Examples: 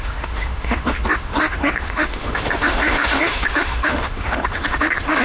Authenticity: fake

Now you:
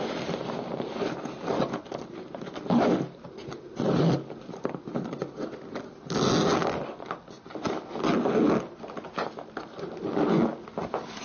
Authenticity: real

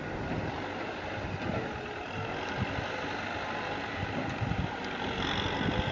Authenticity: real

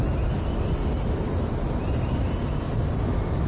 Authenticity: real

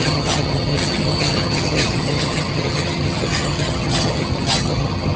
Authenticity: fake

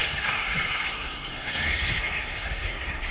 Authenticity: fake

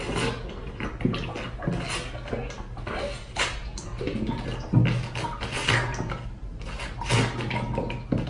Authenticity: real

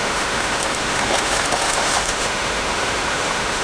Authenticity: fake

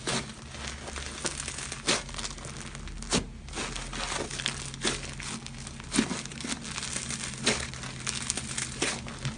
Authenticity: real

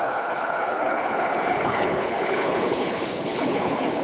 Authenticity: fake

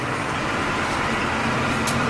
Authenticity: fake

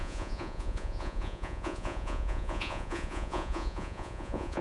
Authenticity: fake